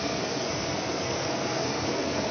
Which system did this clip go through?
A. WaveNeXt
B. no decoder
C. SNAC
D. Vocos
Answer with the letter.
C